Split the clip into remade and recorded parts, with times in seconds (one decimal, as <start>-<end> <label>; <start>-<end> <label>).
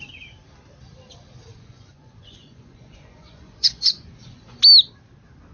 0.0-1.5 recorded; 1.5-4.6 remade; 4.6-5.5 recorded